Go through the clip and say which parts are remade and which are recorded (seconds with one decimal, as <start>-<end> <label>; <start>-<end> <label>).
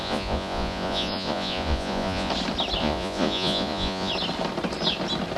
0.0-2.3 remade; 2.3-2.8 recorded; 2.8-4.1 remade; 4.1-5.4 recorded